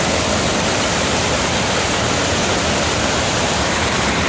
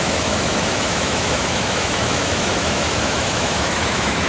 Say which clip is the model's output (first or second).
second